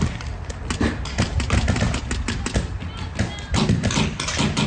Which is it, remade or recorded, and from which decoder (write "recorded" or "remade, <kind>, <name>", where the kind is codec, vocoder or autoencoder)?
recorded